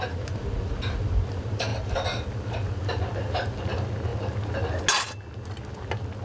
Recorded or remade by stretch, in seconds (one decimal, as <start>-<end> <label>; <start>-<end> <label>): 0.0-6.2 recorded